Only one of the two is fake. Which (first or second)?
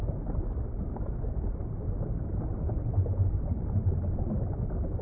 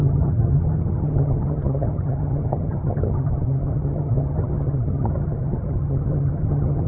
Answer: second